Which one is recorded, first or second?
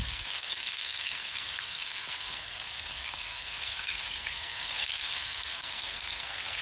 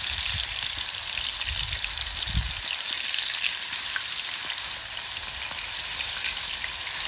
second